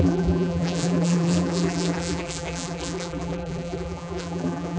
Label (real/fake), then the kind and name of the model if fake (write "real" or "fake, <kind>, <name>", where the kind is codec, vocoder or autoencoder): fake, vocoder, BigVGAN v2